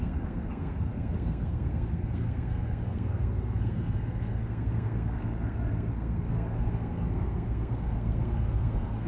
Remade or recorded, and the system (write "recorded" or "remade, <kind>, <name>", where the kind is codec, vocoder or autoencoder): remade, codec, SNAC